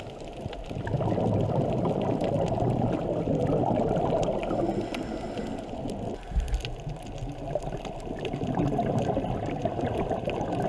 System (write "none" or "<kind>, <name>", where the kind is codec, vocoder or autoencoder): none